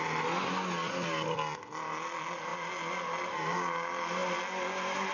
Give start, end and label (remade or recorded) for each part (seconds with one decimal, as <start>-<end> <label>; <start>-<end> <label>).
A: 0.0-5.1 recorded